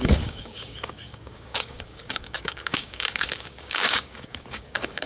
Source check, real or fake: fake